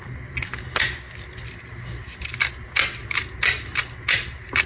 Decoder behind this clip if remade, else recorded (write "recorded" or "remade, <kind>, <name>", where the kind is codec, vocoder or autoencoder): recorded